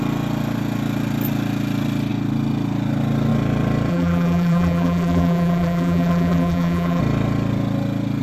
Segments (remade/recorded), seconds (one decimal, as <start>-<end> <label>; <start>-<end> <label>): 0.0-3.9 recorded; 3.9-7.0 remade; 7.0-8.2 recorded